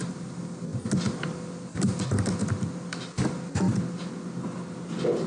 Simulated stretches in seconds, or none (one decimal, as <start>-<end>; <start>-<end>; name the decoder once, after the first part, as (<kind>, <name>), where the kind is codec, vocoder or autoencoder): none